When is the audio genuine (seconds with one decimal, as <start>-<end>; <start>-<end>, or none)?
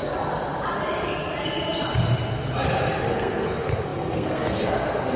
0.0-3.1